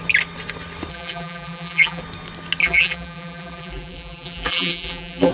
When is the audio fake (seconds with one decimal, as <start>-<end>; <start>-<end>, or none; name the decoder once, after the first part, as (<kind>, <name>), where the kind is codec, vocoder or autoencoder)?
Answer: 0.9-2.0 (vocoder, BigVGAN v2); 2.6-5.3